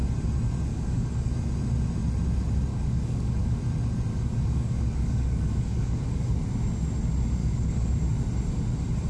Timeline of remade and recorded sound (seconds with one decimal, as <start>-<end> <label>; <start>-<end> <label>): 0.0-0.7 recorded; 0.7-1.3 remade; 1.3-2.7 recorded; 2.7-3.6 remade; 3.6-4.1 recorded; 4.1-6.4 remade; 6.4-7.4 recorded; 7.4-7.9 remade; 7.9-9.1 recorded